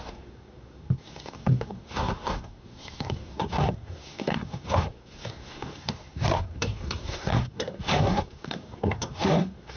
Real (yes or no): no